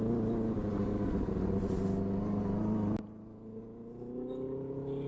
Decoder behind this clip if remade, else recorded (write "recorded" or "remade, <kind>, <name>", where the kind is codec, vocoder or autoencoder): recorded